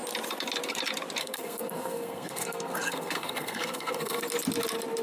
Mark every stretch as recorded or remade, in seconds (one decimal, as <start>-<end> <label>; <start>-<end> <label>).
0.0-1.2 recorded; 1.2-4.2 remade; 4.2-5.0 recorded